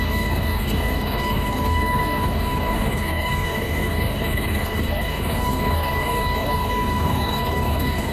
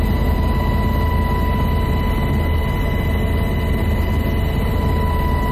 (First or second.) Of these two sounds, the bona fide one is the second